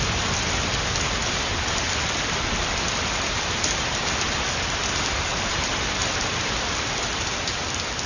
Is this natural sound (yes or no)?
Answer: yes